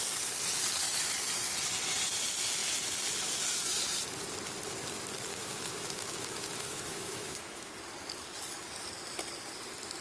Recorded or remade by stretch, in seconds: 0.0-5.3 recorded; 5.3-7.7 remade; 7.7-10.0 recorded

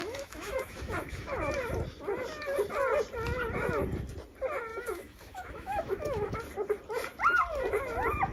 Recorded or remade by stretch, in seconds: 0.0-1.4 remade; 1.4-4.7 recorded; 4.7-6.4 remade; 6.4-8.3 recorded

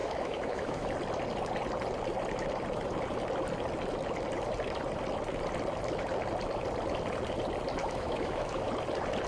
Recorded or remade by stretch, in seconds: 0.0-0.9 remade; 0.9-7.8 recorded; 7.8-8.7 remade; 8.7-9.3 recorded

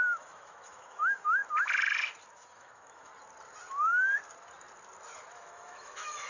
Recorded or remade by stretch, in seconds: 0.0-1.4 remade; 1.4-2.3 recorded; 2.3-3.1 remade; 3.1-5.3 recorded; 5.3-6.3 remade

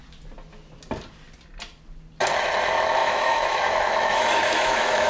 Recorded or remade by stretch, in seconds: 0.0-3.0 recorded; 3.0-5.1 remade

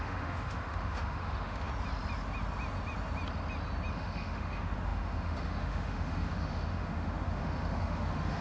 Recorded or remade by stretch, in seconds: 0.0-1.7 remade; 1.7-3.9 recorded; 3.9-8.4 remade

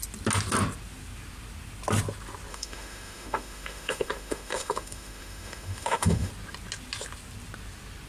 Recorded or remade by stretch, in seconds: 0.0-2.5 recorded; 2.5-6.3 remade; 6.3-8.1 recorded